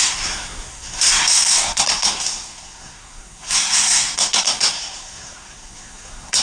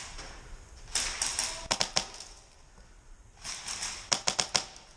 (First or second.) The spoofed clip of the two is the first